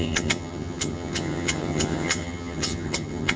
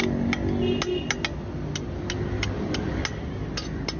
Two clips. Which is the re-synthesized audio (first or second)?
first